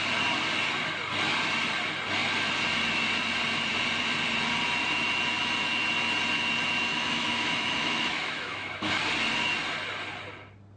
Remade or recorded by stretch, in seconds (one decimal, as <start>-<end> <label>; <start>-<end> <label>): 0.0-6.9 recorded; 6.9-8.9 remade; 8.9-10.8 recorded